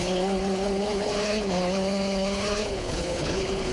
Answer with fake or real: fake